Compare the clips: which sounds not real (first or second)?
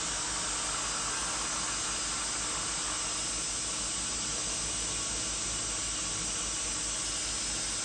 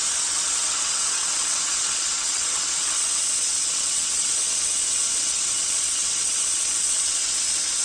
second